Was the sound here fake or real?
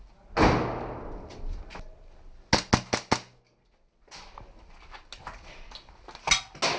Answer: real